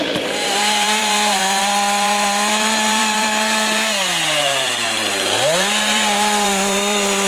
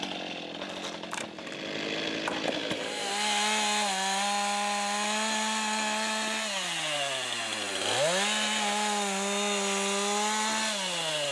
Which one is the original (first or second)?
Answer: second